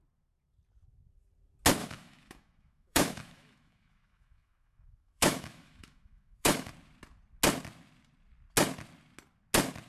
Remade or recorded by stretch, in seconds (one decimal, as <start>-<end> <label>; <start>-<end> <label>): 0.0-1.8 recorded; 1.8-6.7 remade; 6.7-9.9 recorded

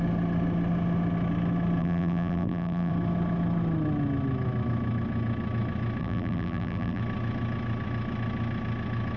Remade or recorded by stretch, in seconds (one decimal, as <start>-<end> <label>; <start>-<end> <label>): 0.0-1.8 recorded; 1.8-2.9 remade; 2.9-6.0 recorded; 6.0-7.0 remade; 7.0-9.2 recorded